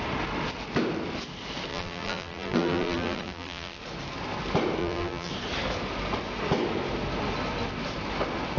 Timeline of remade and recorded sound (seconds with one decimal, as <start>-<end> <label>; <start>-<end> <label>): 0.0-1.7 recorded; 1.7-3.8 remade; 3.8-4.8 recorded; 4.8-5.3 remade; 5.3-8.6 recorded